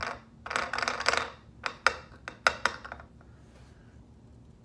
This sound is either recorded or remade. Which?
recorded